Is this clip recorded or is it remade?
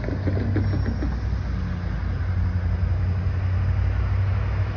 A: recorded